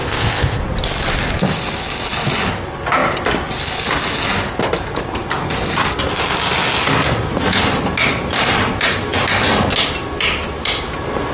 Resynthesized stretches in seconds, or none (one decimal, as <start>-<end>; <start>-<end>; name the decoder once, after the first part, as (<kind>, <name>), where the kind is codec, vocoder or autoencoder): 0.0-0.6 (codec, ZipCodec)